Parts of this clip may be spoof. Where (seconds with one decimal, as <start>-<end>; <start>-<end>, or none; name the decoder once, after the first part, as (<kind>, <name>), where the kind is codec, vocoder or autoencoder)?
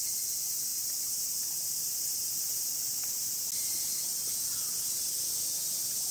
none